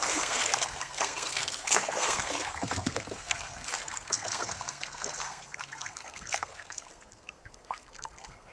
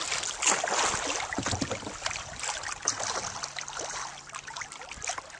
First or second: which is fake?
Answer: first